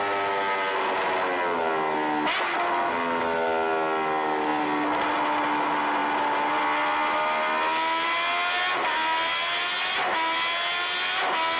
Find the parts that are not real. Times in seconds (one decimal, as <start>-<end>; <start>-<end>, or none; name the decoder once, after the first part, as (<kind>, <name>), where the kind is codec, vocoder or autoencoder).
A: none